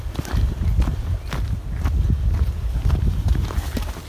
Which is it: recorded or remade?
recorded